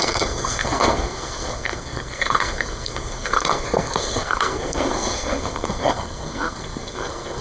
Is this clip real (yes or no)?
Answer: no